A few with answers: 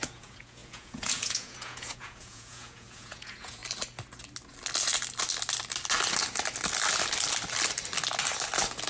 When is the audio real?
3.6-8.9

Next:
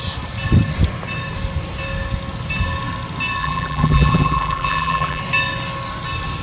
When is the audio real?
0.0-3.4; 5.2-6.4

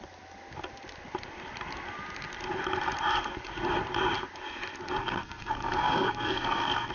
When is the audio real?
0.0-5.0

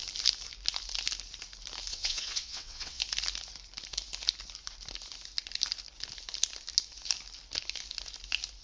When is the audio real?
0.0-1.9; 3.0-8.6

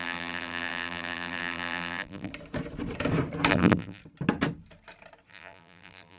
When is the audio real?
2.3-3.5; 4.0-5.3

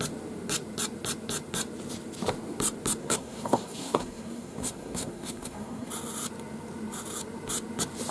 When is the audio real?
0.0-3.0; 5.9-8.1

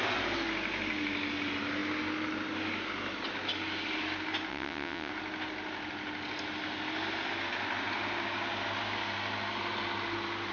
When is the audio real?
0.0-4.5; 5.1-10.5